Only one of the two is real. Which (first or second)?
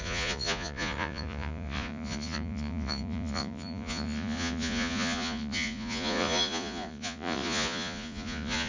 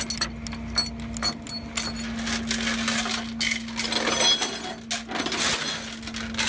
second